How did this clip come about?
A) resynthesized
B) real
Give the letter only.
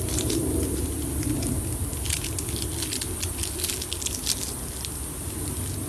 B